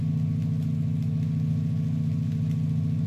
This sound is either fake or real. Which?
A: real